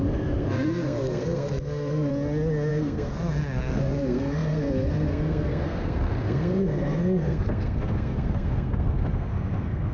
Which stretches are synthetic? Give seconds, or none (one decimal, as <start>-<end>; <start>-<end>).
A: 0.0-2.1; 2.7-9.9